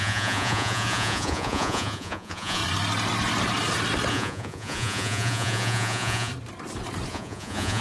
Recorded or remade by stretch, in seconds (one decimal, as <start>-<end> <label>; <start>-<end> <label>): 0.0-2.6 remade; 2.6-4.1 recorded; 4.1-6.3 remade; 6.3-7.1 recorded; 7.1-7.8 remade